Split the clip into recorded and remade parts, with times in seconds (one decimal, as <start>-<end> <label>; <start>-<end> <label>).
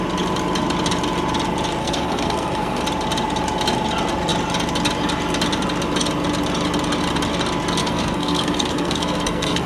0.0-1.8 recorded; 1.8-2.8 remade; 2.8-7.8 recorded; 7.8-9.7 remade